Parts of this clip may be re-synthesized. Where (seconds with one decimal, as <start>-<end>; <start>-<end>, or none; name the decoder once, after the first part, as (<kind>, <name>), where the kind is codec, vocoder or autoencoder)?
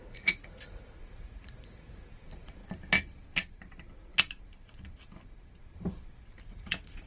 0.0-2.6 (vocoder, Vocos); 6.4-7.1